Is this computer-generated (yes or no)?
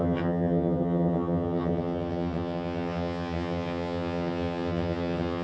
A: yes